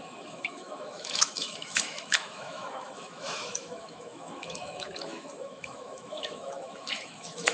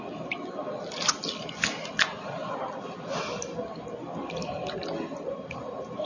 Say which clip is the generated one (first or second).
first